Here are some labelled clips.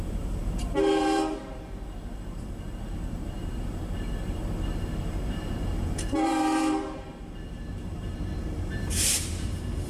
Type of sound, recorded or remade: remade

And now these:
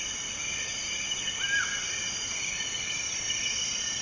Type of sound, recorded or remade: recorded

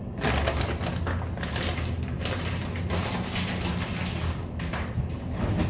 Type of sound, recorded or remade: recorded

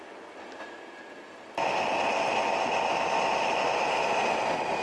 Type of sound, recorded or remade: recorded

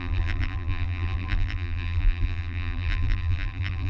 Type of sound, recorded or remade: remade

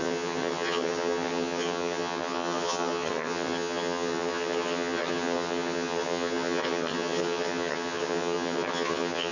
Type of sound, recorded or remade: remade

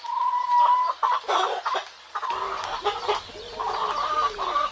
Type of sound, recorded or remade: recorded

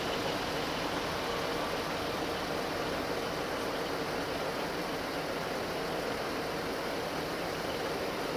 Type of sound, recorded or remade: recorded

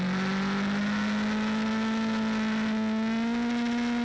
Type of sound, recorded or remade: recorded